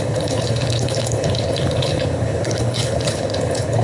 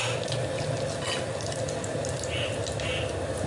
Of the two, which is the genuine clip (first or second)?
second